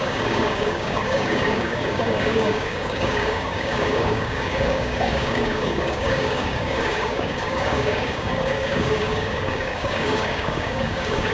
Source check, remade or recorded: remade